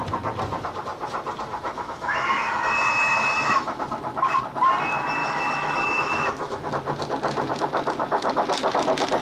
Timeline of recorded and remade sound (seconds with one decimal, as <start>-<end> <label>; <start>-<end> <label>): 0.0-1.5 recorded; 1.5-3.8 remade; 3.8-5.2 recorded; 5.2-6.7 remade; 6.7-9.2 recorded